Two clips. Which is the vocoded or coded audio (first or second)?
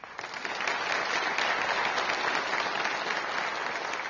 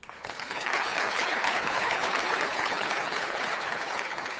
second